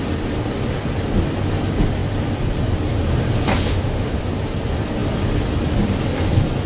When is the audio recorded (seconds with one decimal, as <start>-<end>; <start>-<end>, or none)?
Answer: 0.0-3.7; 4.2-6.7